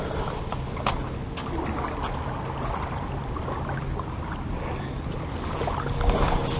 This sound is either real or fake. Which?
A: real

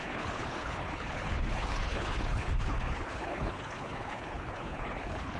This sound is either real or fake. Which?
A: fake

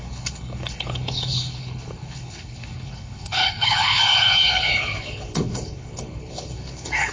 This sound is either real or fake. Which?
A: fake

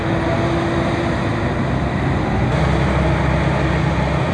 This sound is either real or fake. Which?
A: real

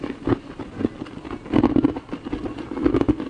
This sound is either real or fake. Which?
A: real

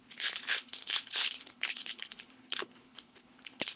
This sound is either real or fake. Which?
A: fake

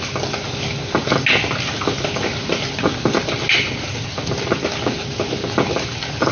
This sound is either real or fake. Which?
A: real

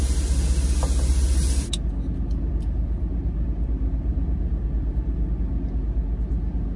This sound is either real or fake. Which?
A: real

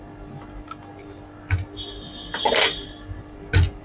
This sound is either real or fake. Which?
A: real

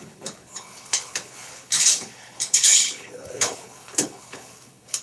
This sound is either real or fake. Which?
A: fake